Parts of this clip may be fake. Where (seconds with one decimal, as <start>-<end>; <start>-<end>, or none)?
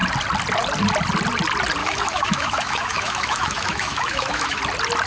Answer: 1.8-4.6